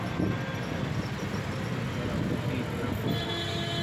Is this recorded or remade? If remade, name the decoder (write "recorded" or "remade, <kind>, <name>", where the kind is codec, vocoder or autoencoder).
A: recorded